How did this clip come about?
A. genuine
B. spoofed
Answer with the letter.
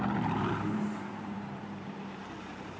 B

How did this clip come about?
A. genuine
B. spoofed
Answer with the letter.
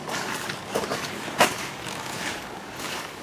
B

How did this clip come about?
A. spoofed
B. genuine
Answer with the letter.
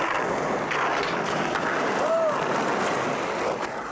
B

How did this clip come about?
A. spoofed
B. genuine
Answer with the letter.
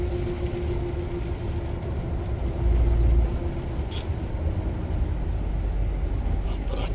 B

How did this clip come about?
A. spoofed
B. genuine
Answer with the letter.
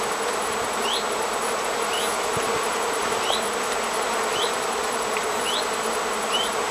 B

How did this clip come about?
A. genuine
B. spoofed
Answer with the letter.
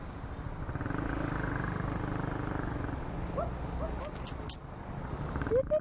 A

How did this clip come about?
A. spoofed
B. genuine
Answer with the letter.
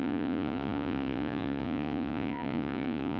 A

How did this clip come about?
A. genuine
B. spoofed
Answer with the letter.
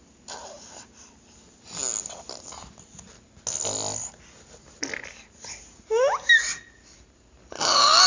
A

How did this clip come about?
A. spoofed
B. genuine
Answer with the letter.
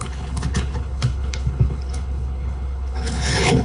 A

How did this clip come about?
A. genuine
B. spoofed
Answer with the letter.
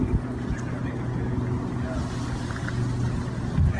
A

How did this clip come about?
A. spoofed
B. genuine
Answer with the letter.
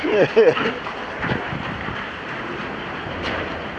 A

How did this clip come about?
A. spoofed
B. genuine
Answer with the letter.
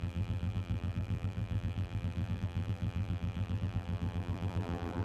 A